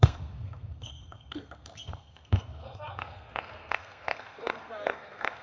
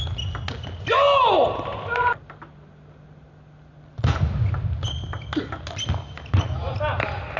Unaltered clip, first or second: second